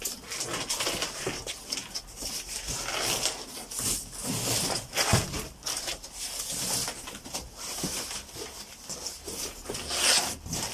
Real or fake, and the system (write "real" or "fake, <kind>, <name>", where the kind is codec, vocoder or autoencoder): real